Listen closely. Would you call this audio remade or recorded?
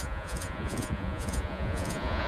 remade